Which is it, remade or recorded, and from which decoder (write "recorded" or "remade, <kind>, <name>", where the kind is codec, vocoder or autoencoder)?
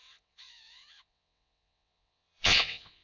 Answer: remade, vocoder, WaveNeXt